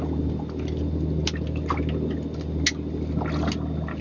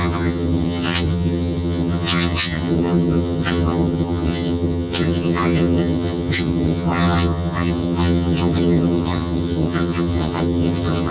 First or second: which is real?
first